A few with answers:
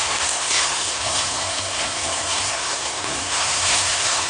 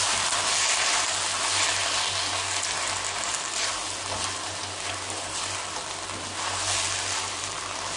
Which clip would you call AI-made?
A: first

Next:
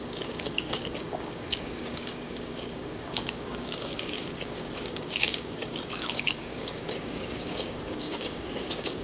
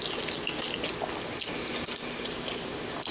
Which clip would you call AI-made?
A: first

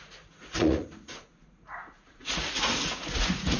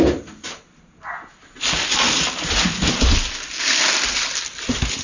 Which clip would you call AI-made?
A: first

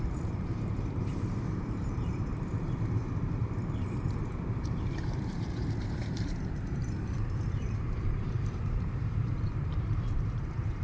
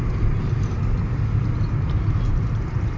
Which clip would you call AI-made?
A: first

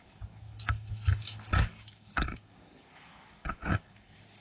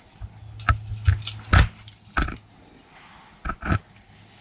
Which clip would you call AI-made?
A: first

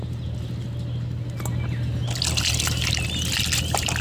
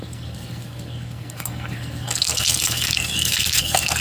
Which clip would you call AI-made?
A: second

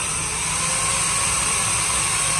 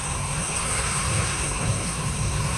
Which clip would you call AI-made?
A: second